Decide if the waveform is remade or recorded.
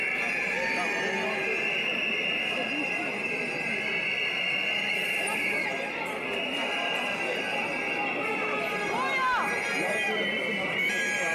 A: recorded